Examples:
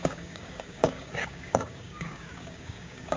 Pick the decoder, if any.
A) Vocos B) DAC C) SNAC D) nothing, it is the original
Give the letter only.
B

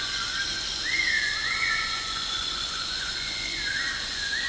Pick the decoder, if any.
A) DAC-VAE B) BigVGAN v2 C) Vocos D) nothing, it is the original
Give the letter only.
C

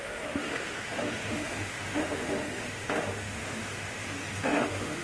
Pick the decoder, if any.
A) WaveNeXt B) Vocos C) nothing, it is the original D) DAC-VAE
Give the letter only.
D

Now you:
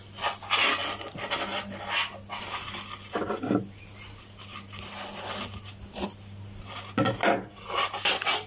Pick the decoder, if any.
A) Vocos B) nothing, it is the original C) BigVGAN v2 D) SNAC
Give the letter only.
B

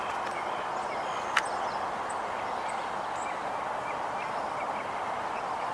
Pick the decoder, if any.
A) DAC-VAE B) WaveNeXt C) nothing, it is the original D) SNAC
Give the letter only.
C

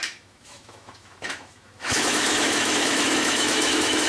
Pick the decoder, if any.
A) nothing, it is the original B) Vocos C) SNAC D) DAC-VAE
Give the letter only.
D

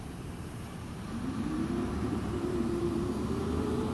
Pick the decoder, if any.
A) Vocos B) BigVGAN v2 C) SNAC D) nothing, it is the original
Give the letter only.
B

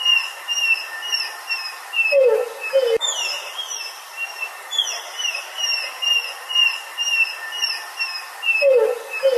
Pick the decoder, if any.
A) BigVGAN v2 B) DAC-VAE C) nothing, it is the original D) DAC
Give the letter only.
C